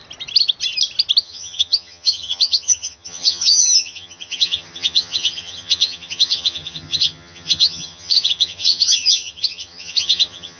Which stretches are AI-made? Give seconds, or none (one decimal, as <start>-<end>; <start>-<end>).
1.2-10.6